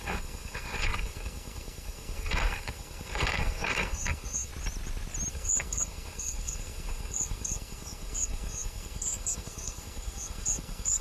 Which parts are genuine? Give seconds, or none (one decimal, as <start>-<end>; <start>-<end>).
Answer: 4.5-5.3